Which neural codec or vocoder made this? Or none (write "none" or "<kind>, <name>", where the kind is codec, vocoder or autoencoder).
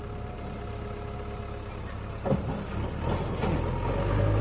none